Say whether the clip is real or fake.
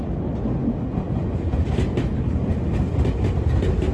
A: real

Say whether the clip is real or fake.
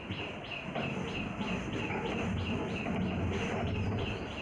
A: real